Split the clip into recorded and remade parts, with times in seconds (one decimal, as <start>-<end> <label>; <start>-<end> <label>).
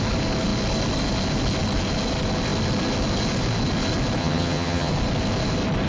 0.0-4.2 recorded; 4.2-4.9 remade; 4.9-5.9 recorded